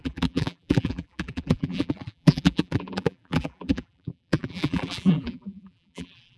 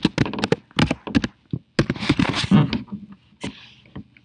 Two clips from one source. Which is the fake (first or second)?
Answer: first